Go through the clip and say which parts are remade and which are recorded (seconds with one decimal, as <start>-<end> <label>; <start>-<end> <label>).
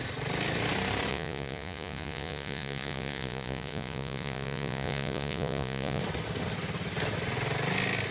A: 0.0-1.1 recorded; 1.1-6.0 remade; 6.0-8.1 recorded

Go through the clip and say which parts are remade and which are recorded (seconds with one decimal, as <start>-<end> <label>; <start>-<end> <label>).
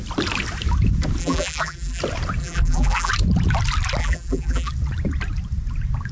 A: 0.0-1.2 recorded; 1.2-2.0 remade; 2.0-2.4 recorded; 2.4-3.1 remade; 3.1-4.0 recorded; 4.0-4.7 remade; 4.7-6.1 recorded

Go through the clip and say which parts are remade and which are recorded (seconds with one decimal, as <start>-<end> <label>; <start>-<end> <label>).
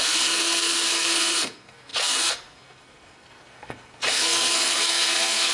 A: 0.0-5.5 remade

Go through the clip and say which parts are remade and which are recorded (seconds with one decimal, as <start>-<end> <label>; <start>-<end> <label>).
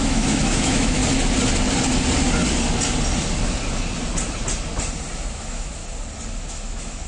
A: 0.0-1.0 remade; 1.0-5.3 recorded; 5.3-5.8 remade; 5.8-6.5 recorded; 6.5-7.1 remade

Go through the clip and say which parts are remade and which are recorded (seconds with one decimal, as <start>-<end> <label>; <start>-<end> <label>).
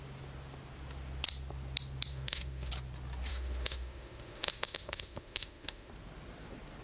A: 0.0-2.1 recorded; 2.1-2.7 remade; 2.7-3.3 recorded; 3.3-5.9 remade; 5.9-6.8 recorded